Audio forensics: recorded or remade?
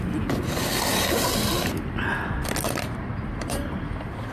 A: recorded